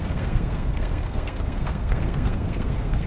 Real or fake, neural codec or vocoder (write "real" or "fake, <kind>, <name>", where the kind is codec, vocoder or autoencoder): fake, codec, SNAC